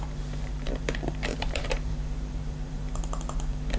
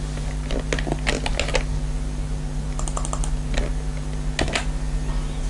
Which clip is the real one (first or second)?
second